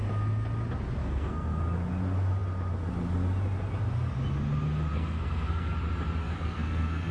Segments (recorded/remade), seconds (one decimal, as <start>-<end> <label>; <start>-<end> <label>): 0.0-1.0 recorded; 1.0-1.6 remade; 1.6-4.9 recorded; 4.9-5.7 remade; 5.7-6.2 recorded; 6.2-7.1 remade